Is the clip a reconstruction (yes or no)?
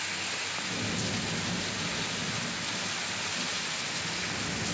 no